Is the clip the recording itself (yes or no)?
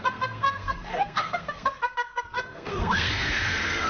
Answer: no